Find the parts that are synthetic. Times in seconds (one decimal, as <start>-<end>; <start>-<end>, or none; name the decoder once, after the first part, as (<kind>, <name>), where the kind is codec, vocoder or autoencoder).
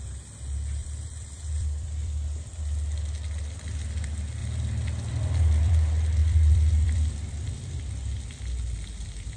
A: 0.8-2.6 (vocoder, BigVGAN v2); 4.4-5.7; 6.2-7.8